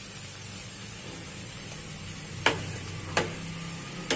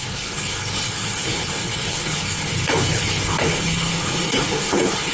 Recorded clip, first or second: first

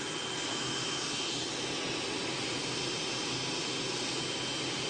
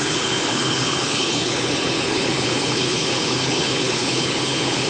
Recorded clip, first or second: first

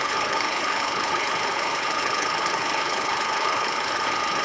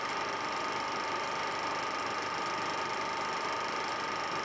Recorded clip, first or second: second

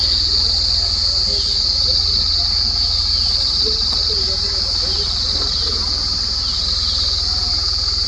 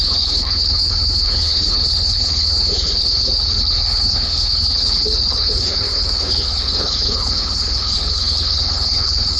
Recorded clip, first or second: first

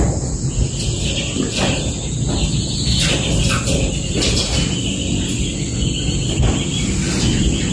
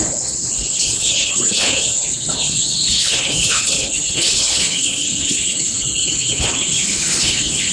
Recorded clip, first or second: first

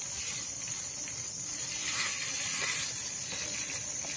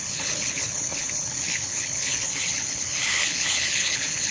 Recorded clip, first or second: first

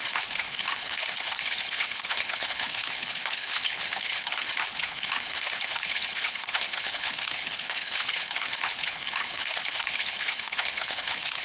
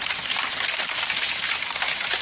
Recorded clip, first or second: second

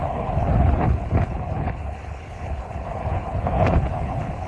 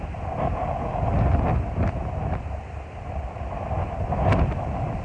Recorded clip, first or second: second